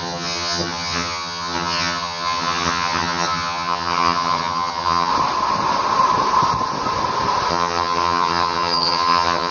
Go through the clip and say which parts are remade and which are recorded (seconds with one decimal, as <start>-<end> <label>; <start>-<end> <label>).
0.0-5.1 remade; 5.1-7.5 recorded; 7.5-9.5 remade